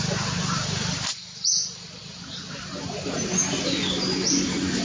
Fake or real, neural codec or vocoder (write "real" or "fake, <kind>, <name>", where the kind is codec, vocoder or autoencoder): real